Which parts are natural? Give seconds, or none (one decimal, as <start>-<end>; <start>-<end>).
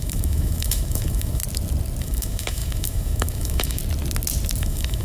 1.4-2.0; 3.8-4.6